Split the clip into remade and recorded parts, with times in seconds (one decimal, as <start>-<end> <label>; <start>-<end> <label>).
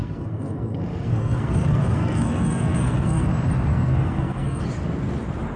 0.0-3.3 remade; 3.3-3.7 recorded; 3.7-4.6 remade; 4.6-5.6 recorded